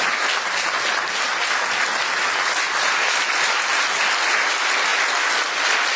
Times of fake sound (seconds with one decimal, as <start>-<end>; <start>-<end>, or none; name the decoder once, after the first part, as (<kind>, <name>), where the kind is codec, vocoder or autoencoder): none